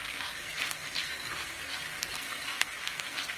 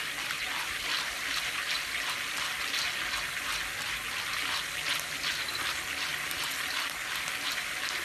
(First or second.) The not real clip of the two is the first